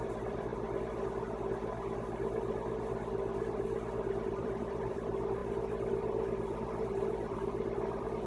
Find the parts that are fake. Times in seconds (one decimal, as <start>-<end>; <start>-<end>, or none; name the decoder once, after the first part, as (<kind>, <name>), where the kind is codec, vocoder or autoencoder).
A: 0.0-0.5 (vocoder, BigVGAN v2); 4.1-8.3